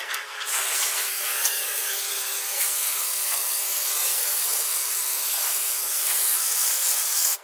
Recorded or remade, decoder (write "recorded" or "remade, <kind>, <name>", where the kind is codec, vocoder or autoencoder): remade, codec, SNAC